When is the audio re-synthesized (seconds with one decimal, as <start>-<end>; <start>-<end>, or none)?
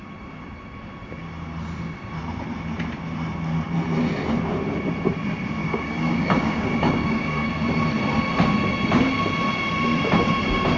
5.6-7.5